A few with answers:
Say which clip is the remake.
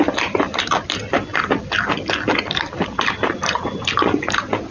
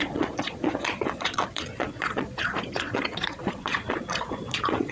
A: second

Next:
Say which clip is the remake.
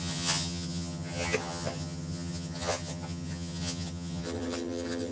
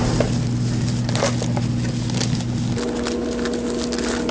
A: first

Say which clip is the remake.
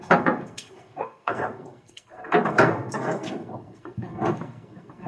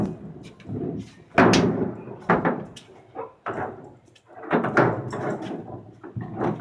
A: first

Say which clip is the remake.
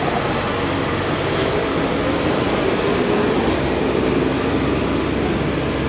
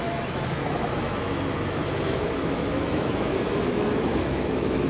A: second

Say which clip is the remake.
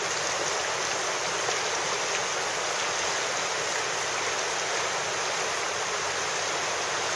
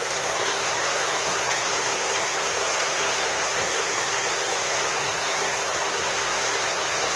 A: second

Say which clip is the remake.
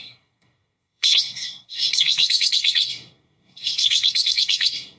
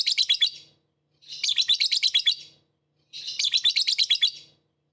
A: first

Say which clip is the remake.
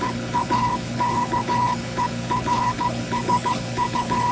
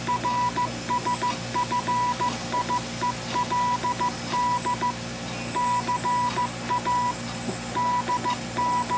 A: first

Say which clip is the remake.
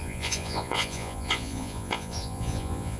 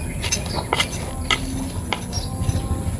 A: first